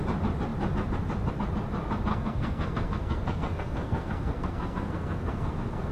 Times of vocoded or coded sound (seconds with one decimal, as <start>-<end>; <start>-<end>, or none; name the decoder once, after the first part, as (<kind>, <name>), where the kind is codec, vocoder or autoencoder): 2.1-5.9 (codec, SNAC)